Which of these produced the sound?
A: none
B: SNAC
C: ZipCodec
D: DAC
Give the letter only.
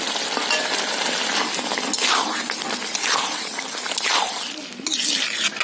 A